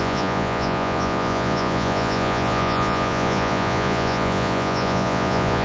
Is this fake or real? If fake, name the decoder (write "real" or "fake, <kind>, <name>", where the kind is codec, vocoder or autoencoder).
fake, vocoder, Vocos